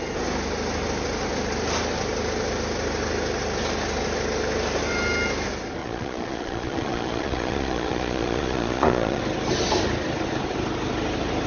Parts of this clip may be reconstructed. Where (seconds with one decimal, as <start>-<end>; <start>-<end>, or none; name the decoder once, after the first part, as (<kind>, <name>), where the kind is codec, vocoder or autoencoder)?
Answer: 5.8-9.2 (vocoder, Vocos)